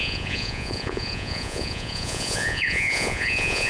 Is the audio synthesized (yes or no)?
yes